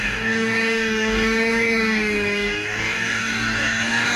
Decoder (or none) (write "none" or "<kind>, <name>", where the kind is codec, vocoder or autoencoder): codec, DAC